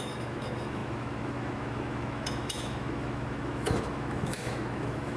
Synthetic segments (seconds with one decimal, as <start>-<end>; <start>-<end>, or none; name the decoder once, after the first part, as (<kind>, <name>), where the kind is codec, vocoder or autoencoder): 0.0-5.2 (autoencoder, DAC-VAE)